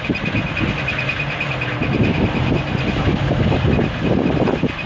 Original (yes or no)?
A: yes